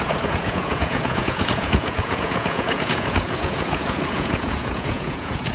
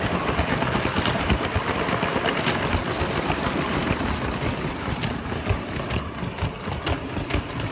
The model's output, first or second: first